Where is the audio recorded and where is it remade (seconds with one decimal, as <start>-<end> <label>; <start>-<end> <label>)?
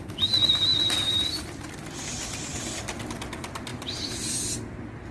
0.0-0.7 recorded; 0.7-1.7 remade; 1.7-2.5 recorded; 2.5-3.0 remade; 3.0-5.1 recorded